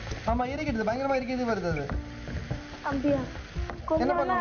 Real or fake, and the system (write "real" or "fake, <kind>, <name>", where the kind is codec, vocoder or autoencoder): real